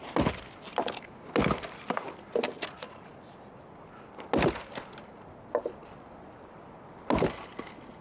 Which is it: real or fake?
real